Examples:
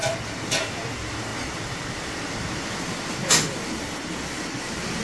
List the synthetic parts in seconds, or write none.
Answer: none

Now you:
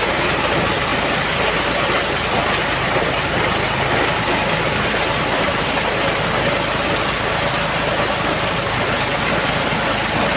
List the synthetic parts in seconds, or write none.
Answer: none

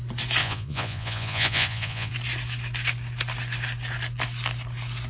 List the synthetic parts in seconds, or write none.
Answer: 0.4-2.1

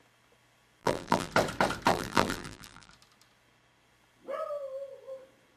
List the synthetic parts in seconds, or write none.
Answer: 0.8-1.3; 1.9-2.9

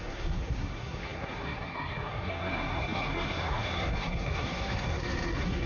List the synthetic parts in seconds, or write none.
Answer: 0.0-5.7